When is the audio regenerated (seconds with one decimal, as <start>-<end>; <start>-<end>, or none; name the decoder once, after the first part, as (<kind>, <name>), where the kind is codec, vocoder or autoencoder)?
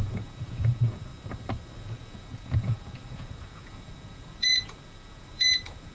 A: 0.0-1.1 (vocoder, Vocos); 1.9-5.9